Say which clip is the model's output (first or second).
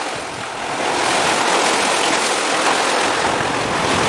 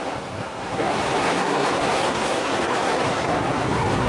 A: second